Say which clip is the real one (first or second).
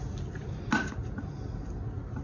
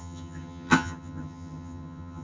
first